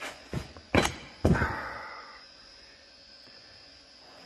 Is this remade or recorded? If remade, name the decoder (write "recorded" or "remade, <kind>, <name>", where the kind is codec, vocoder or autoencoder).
remade, vocoder, Vocos